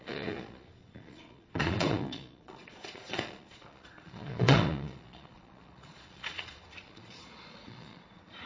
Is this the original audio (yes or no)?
no